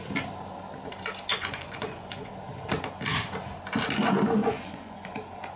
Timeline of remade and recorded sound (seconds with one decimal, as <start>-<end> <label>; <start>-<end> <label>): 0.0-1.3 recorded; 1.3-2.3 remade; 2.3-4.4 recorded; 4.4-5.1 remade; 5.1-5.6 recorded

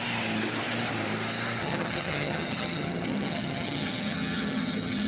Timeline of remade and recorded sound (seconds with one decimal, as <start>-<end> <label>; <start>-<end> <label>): 0.0-1.6 recorded; 1.6-5.1 remade

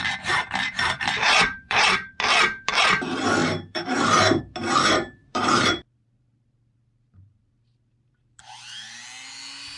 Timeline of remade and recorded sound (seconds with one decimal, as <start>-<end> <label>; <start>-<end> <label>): 0.0-0.4 recorded; 0.4-2.1 remade; 2.1-3.4 recorded; 3.4-4.4 remade; 4.4-5.2 recorded; 5.2-8.4 remade; 8.4-9.8 recorded